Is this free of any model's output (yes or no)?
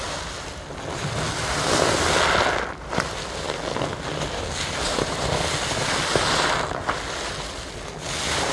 yes